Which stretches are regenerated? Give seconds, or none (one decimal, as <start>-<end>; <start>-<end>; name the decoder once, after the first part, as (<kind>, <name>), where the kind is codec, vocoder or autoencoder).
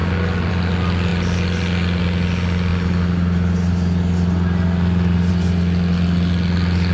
none